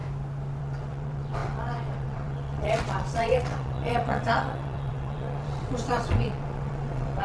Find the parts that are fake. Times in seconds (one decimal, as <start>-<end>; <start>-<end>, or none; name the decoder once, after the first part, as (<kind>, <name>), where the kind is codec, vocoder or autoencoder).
0.6-7.2 (vocoder, WaveNeXt)